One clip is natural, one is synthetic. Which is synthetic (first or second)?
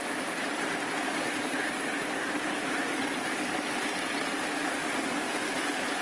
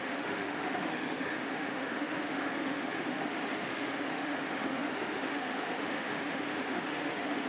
second